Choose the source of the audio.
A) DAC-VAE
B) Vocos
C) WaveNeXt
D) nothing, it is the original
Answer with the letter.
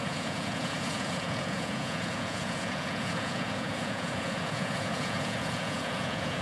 B